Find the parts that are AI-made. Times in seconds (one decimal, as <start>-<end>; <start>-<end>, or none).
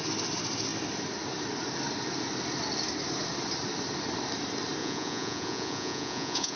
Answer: 4.8-6.6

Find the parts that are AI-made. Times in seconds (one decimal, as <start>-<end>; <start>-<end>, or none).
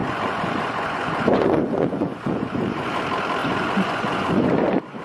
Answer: 0.0-3.0; 3.4-5.0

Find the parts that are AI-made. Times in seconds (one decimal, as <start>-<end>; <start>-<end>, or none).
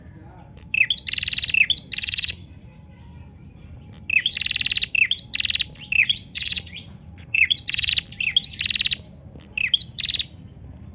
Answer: 2.0-2.8; 6.0-7.9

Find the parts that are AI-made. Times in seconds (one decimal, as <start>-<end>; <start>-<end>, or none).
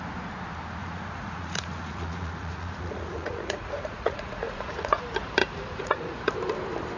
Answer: 0.8-5.0; 5.4-6.3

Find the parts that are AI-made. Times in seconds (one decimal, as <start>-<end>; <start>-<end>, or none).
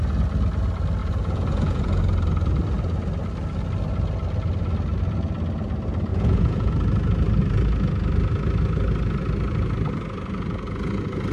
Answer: 1.0-2.0; 6.1-6.7